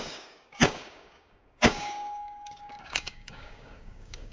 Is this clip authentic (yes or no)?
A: no